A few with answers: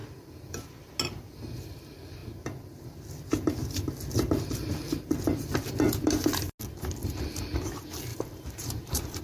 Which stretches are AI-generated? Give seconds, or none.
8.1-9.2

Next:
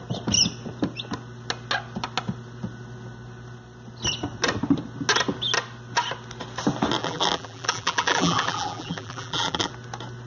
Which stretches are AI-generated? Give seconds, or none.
7.0-9.7

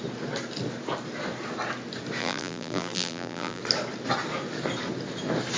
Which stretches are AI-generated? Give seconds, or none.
2.2-3.6

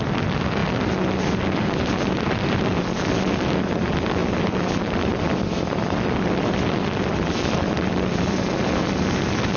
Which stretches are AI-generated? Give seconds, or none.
4.2-8.9

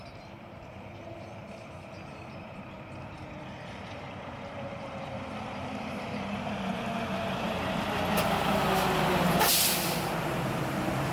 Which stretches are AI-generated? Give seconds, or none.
0.0-6.7; 9.9-11.1

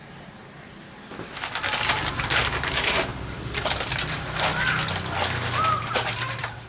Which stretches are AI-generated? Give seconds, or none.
0.0-0.4; 1.9-3.1; 3.6-4.5; 5.9-6.7

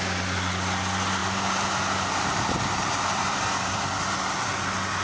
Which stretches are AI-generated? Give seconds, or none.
1.2-3.8

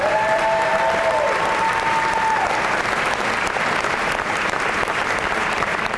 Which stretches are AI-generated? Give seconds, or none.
0.0-0.7; 4.3-6.0